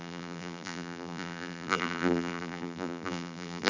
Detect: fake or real fake